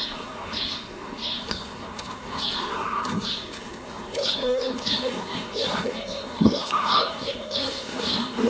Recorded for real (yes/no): no